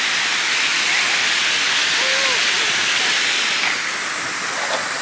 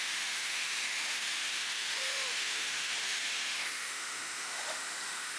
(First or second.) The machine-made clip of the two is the second